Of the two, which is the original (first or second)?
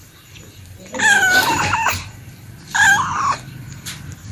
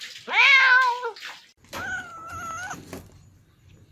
second